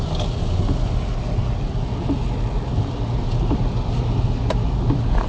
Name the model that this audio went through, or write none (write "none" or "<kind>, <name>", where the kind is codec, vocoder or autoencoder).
none